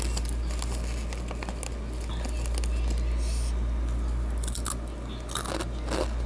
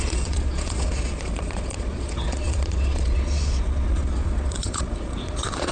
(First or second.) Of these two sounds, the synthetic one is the second